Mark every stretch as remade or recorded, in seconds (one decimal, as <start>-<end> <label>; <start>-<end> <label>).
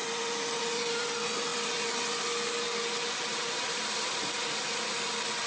0.0-5.5 recorded